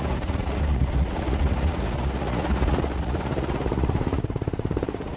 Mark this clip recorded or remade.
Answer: remade